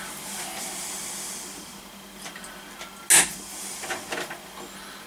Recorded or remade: recorded